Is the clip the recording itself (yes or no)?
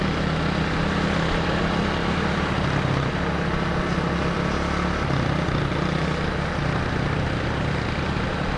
yes